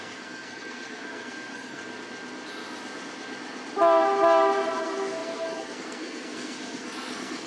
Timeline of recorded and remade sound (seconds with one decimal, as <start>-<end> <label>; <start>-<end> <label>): 0.0-1.8 remade; 1.8-4.8 recorded; 4.8-7.5 remade